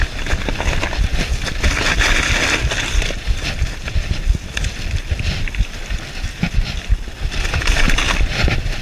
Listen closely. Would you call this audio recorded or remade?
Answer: recorded